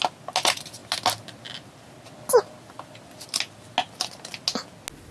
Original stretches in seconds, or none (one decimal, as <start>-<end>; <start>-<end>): 0.0-5.1

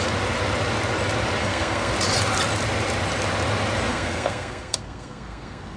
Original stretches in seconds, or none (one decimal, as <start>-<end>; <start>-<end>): 0.0-1.4; 1.9-3.9

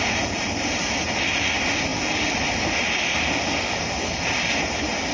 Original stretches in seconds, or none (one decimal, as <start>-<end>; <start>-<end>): 0.0-5.1

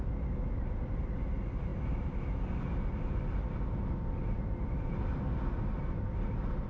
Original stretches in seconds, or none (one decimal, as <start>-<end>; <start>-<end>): 0.0-6.7

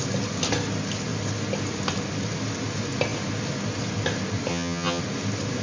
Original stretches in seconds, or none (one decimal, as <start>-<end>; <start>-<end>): 0.0-4.5; 5.0-5.6